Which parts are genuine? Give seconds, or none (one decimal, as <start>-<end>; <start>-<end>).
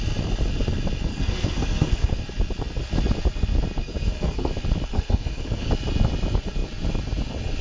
0.0-1.1; 2.2-3.8; 4.5-4.9; 5.7-7.6